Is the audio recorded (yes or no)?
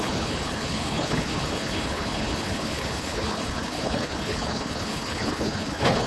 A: no